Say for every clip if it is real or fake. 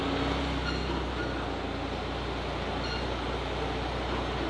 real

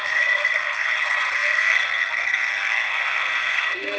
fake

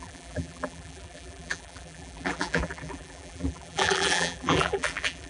fake